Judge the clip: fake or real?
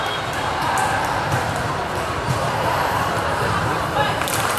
fake